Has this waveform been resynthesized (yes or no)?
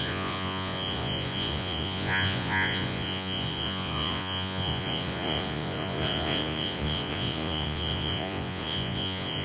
yes